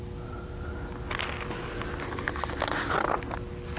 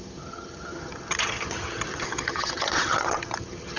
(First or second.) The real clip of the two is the first